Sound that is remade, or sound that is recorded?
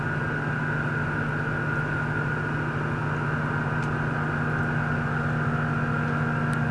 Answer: recorded